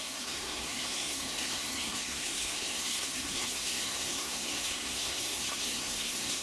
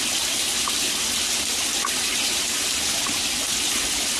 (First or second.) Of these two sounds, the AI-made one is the first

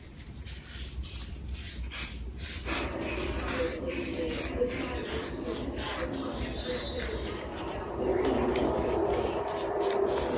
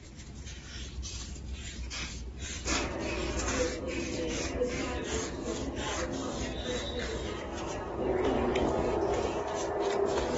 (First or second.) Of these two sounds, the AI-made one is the first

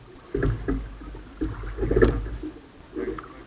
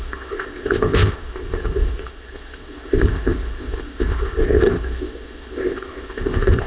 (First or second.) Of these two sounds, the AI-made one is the second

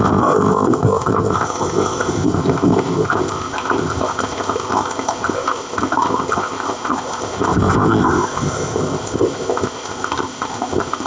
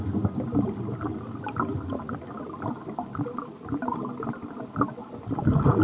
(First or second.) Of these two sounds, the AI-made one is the first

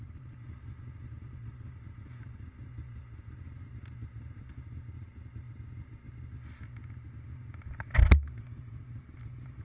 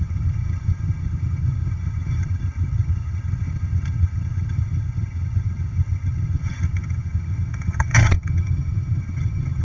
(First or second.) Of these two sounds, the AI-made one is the second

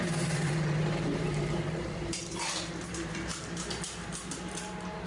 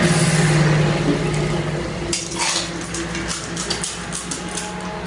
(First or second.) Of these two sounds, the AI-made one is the first